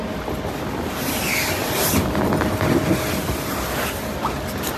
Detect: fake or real real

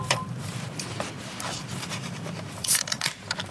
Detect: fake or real fake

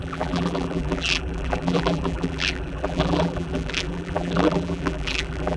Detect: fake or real fake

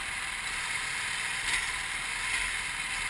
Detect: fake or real real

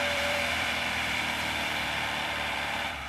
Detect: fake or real fake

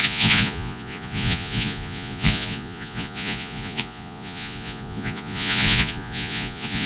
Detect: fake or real fake